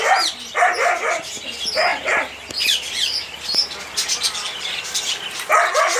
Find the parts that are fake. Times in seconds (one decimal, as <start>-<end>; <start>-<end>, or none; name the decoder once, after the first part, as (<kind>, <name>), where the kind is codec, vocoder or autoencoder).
1.9-3.4 (vocoder, BigVGAN v2)